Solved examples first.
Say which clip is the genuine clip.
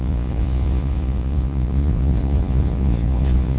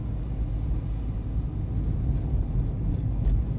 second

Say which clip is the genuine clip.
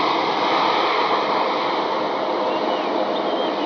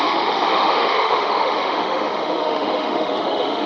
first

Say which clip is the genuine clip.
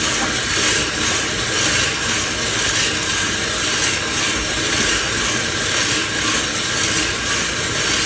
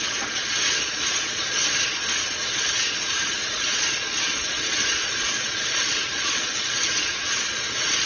first